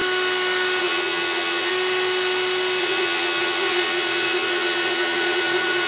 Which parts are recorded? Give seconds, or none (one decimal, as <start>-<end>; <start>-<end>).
0.0-0.8; 1.7-2.8